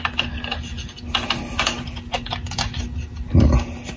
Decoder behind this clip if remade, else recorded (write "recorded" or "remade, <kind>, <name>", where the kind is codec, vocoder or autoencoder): recorded